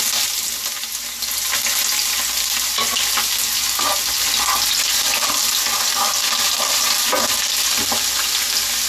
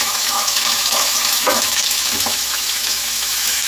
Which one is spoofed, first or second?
second